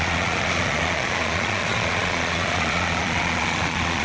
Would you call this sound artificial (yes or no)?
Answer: yes